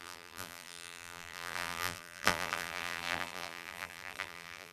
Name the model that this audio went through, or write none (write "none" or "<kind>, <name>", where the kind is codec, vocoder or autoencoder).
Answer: vocoder, BigVGAN v2